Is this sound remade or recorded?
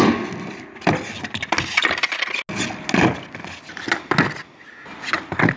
recorded